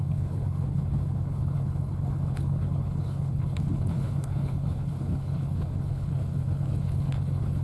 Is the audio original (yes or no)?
no